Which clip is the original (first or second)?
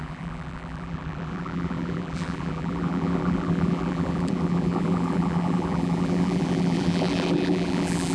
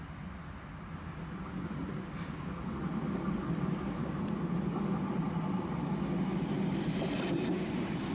second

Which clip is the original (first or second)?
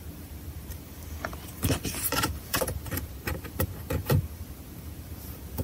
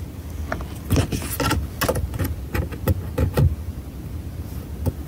second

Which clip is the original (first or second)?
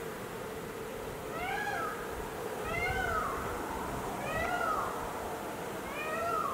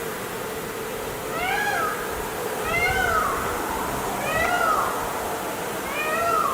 second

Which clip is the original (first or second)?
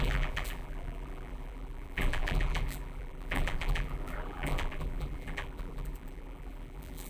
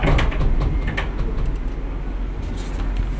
second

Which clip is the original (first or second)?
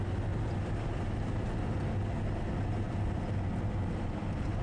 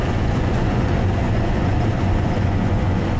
first